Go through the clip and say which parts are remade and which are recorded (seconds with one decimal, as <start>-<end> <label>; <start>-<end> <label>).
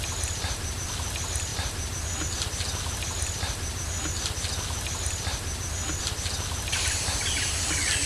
0.0-8.1 recorded